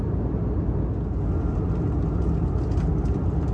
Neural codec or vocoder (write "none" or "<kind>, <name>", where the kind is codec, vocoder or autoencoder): none